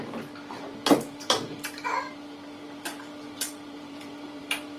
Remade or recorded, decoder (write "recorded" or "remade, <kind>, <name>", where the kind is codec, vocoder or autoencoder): remade, vocoder, BigVGAN v2